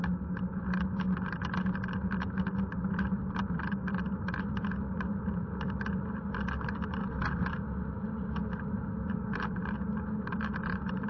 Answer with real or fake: real